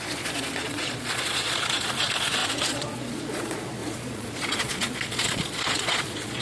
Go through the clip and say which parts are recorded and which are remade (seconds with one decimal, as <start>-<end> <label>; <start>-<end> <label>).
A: 0.0-6.4 remade

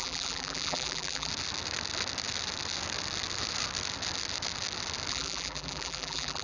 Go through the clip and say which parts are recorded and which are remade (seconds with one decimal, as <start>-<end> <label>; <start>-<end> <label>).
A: 0.0-1.3 remade; 1.3-5.1 recorded; 5.1-6.4 remade

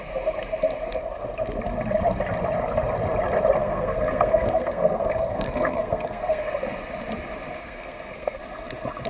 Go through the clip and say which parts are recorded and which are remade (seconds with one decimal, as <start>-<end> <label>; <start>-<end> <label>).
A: 0.0-3.6 recorded; 3.6-6.5 remade; 6.5-7.6 recorded; 7.6-8.4 remade; 8.4-9.1 recorded

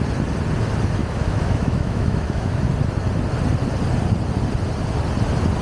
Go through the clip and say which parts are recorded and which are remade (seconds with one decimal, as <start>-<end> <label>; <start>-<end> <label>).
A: 0.0-1.0 recorded; 1.0-2.6 remade; 2.6-5.6 recorded